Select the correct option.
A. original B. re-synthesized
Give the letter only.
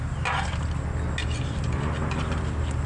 A